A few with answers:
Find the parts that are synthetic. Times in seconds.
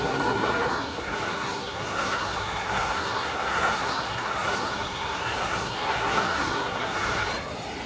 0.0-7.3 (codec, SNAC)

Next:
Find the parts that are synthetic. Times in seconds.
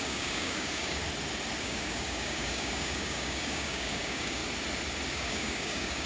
0.0-1.0 (codec, DAC); 1.6-4.4; 5.1-6.1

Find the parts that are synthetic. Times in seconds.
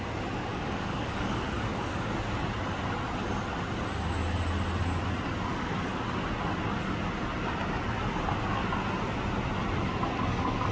0.5-2.1 (codec, DAC); 5.5-6.0